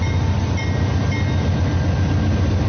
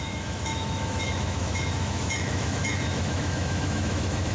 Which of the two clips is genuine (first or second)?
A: first